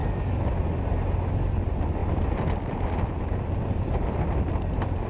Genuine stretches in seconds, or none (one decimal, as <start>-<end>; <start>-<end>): 0.0-2.0